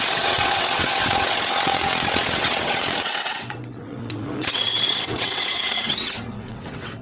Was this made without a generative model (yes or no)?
no